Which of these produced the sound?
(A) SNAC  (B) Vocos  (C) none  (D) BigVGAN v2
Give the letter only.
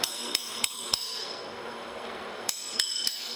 A